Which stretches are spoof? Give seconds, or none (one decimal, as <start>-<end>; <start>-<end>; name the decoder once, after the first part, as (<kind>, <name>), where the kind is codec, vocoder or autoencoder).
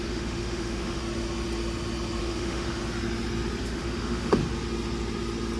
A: 0.0-1.0 (autoencoder, DAC-VAE); 2.2-2.8; 3.6-4.4